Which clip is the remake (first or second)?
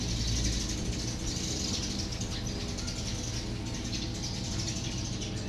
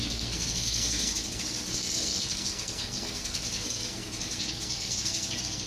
second